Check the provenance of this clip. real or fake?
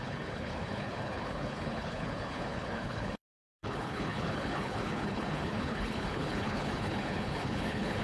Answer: fake